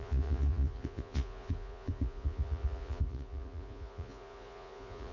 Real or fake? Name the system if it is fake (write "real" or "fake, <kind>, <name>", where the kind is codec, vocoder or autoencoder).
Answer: fake, vocoder, Vocos